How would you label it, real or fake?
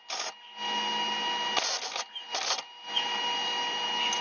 real